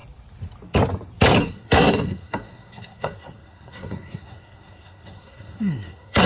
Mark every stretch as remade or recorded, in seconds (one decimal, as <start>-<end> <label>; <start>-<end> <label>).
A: 0.0-1.4 recorded; 1.4-6.3 remade